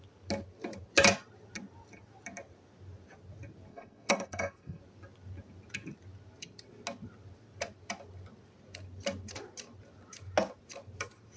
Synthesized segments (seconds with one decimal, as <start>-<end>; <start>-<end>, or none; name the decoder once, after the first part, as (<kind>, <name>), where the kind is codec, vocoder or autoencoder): 3.7-4.8 (codec, SNAC)